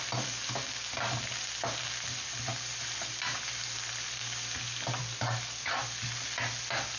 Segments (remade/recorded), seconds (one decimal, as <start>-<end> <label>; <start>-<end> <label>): 0.0-7.0 recorded